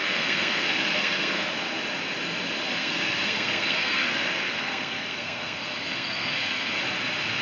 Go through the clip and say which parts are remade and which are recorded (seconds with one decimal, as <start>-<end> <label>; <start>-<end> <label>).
0.0-1.5 remade; 1.5-2.8 recorded; 2.8-6.8 remade; 6.8-7.4 recorded